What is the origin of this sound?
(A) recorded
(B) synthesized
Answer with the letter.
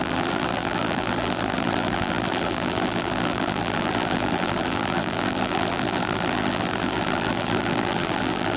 B